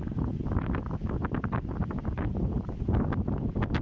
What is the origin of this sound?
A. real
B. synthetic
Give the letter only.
A